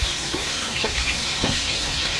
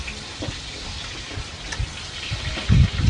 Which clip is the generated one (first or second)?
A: first